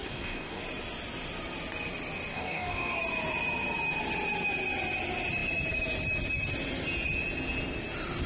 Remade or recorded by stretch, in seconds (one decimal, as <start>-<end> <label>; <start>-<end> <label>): 0.0-0.6 remade; 0.6-2.3 recorded; 2.3-3.0 remade; 3.0-8.3 recorded